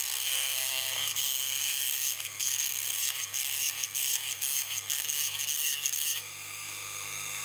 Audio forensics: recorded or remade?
remade